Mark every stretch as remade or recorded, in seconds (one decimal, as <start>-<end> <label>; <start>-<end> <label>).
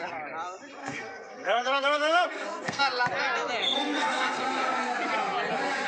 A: 0.0-0.8 recorded; 0.8-2.8 remade; 2.8-3.6 recorded; 3.6-4.4 remade; 4.4-5.9 recorded